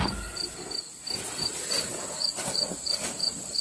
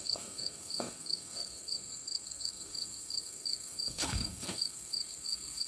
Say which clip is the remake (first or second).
second